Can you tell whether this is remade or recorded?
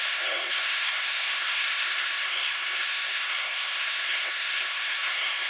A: remade